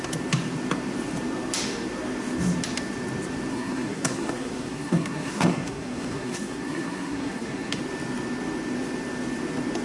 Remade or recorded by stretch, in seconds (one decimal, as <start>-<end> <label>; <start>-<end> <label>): 0.0-3.5 recorded; 3.5-7.8 remade; 7.8-9.8 recorded